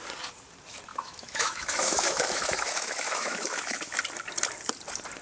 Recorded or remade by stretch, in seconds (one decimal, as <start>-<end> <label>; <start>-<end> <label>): 0.0-0.9 recorded; 0.9-4.0 remade; 4.0-5.2 recorded